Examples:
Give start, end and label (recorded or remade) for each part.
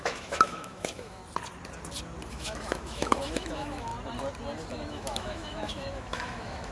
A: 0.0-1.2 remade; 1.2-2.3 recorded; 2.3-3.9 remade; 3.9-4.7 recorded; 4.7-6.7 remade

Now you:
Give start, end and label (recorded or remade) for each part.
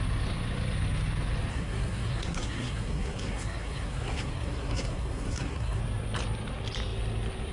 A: 0.0-1.5 recorded; 1.5-5.8 remade; 5.8-7.5 recorded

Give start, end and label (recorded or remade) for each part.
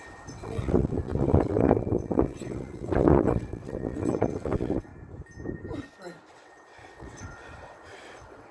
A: 0.0-4.9 remade; 4.9-6.3 recorded; 6.3-8.5 remade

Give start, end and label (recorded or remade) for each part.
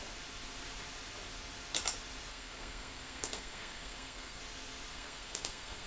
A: 0.0-2.3 recorded; 2.3-4.4 remade; 4.4-4.9 recorded; 4.9-5.9 remade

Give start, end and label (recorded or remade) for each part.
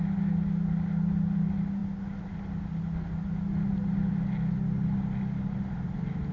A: 0.0-6.3 recorded